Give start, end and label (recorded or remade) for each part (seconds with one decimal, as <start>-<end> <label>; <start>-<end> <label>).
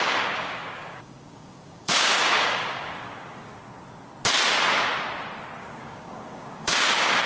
0.0-3.6 remade; 3.6-5.6 recorded; 5.6-7.3 remade